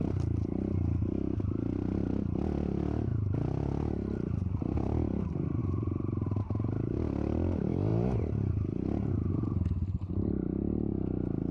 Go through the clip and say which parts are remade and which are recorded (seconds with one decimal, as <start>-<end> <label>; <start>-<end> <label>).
0.0-5.6 recorded; 5.6-6.4 remade; 6.4-7.9 recorded; 7.9-8.5 remade; 8.5-11.5 recorded